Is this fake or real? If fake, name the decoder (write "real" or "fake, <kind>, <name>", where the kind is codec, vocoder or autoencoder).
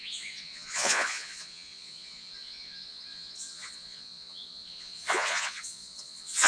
fake, vocoder, Vocos